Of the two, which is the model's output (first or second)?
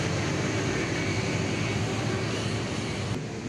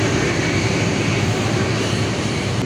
second